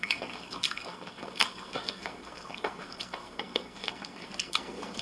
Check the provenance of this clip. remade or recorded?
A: remade